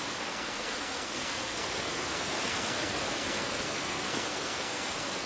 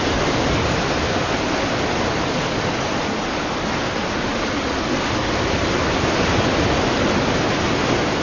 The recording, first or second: second